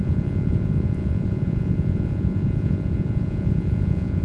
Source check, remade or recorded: remade